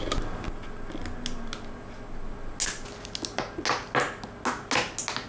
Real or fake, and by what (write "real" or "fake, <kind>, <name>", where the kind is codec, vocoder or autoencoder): real